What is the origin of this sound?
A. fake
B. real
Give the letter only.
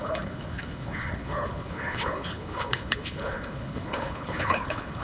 A